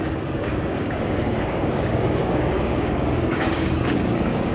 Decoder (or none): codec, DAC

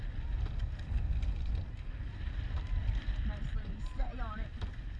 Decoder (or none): none